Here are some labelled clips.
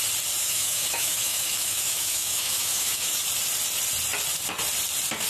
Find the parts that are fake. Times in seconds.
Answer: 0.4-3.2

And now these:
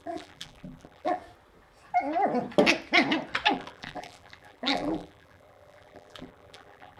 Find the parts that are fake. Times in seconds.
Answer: 0.0-1.2; 3.5-7.0

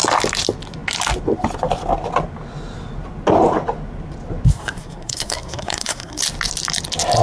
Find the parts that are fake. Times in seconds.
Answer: 4.5-6.2

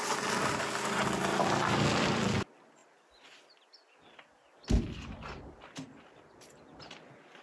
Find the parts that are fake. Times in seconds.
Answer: none

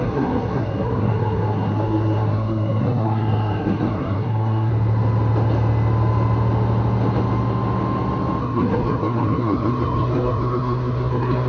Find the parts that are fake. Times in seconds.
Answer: 0.0-4.7; 8.4-11.5

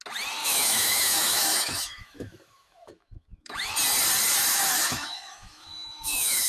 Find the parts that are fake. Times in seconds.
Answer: 0.4-3.7; 4.5-6.5

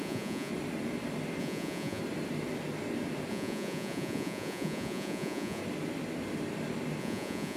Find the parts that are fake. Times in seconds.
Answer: 0.0-0.5; 1.4-2.0; 3.3-5.6; 7.0-7.6

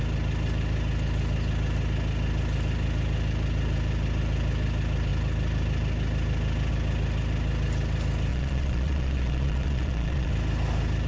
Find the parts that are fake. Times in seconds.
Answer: 8.3-10.3